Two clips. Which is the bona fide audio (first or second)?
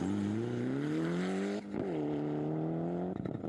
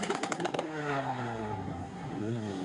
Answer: first